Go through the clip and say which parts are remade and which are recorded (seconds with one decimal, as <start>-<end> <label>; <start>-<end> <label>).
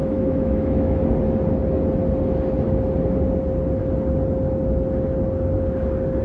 0.0-1.0 remade; 1.0-6.2 recorded